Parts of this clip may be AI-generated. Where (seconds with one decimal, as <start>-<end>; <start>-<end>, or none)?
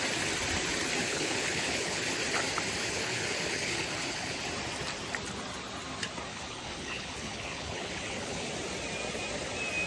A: 1.0-2.0; 2.8-4.4; 6.3-8.5